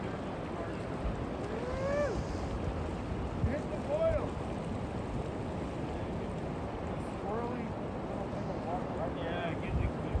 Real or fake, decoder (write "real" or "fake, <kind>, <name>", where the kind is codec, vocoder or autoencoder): real